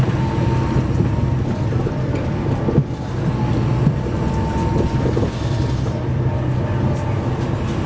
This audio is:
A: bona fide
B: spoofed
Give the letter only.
A